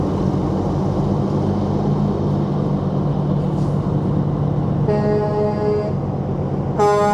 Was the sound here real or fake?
real